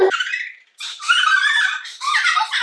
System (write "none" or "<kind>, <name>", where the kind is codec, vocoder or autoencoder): vocoder, BigVGAN v2